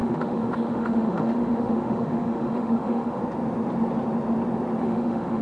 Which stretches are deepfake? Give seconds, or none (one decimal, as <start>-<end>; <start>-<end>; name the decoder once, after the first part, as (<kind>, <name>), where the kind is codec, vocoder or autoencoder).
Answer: 0.0-3.2 (autoencoder, DAC-VAE); 4.8-5.4